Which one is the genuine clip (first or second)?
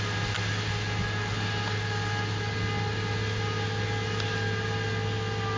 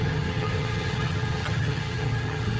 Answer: first